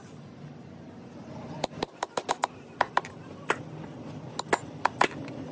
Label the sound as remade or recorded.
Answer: recorded